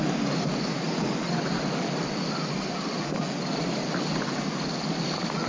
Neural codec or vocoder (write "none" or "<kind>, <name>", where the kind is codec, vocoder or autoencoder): none